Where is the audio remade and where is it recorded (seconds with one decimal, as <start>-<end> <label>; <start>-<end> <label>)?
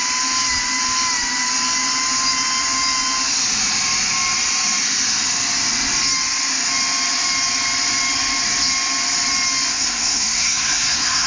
0.0-9.7 recorded; 9.7-11.3 remade